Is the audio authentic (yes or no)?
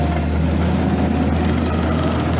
yes